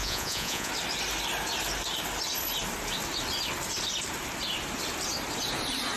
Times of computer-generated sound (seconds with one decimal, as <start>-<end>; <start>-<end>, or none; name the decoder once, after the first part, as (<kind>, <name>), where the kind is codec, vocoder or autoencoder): 0.0-0.7 (vocoder, Vocos)